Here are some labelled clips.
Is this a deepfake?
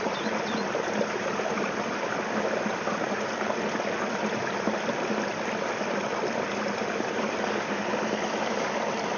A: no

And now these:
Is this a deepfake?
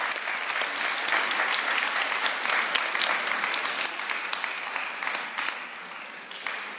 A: no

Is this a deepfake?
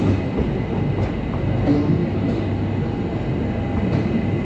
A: no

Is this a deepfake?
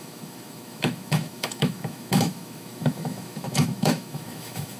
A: yes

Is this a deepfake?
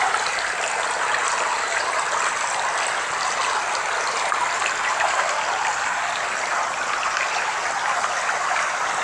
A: no